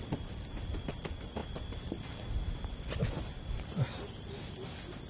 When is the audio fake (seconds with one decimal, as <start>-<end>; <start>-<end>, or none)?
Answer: none